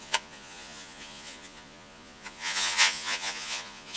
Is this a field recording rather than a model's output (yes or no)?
no